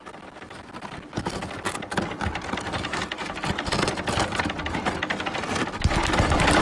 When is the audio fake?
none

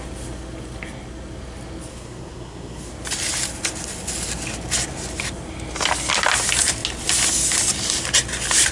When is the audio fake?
1.9-2.9 (codec, SNAC)

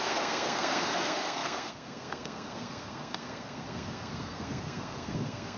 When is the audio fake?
0.0-5.6 (codec, SNAC)

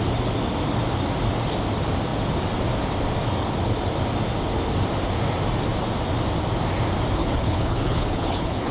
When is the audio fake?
7.2-8.7 (codec, HILCodec)

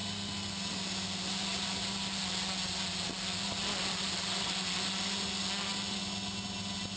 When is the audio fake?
none